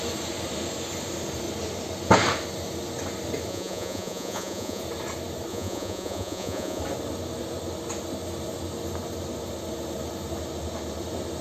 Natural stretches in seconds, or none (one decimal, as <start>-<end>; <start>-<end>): 0.0-3.5; 4.8-5.5; 6.8-11.4